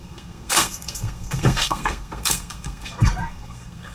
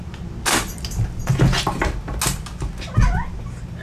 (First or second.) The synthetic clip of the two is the first